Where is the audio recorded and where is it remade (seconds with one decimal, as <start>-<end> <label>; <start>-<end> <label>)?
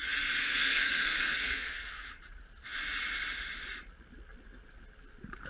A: 0.0-0.4 recorded; 0.4-1.9 remade; 1.9-5.5 recorded